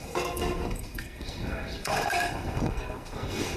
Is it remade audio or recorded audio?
remade